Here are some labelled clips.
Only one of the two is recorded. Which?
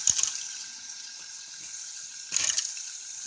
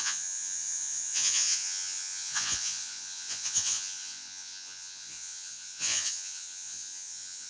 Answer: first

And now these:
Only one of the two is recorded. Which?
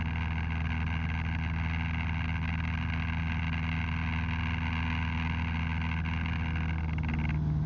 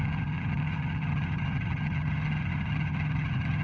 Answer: first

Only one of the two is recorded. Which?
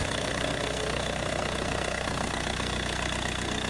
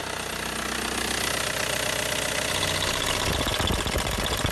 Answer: second